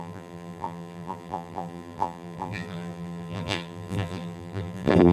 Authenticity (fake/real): fake